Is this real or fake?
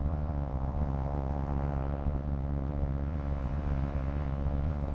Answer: fake